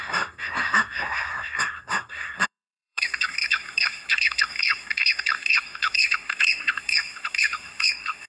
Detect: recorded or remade remade